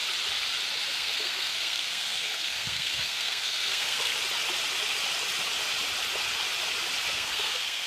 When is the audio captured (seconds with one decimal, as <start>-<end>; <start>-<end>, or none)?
0.0-0.9; 4.1-7.1